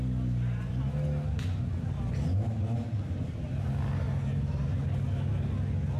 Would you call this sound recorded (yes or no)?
yes